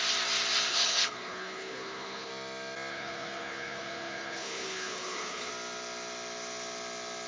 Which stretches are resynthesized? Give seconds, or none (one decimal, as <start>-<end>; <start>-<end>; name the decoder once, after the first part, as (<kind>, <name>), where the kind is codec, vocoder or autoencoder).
0.7-2.3 (codec, HILCodec); 2.9-5.5